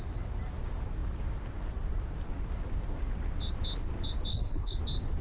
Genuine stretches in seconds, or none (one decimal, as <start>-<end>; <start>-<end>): 0.0-4.3; 4.8-5.2